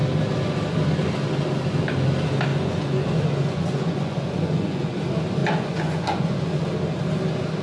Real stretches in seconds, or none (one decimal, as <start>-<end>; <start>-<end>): 0.0-2.5; 5.0-5.4; 6.6-7.6